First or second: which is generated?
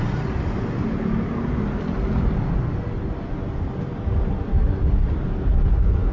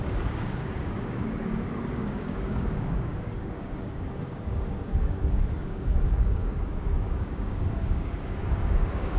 second